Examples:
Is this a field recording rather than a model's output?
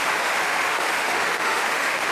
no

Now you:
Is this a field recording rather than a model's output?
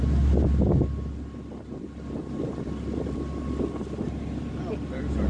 yes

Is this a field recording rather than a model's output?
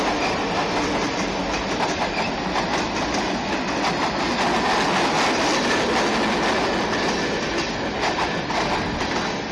yes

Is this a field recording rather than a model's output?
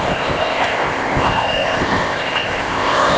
no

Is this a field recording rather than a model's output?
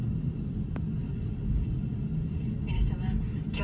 yes